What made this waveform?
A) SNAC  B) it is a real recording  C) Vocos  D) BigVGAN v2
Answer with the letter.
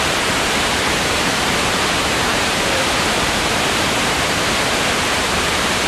D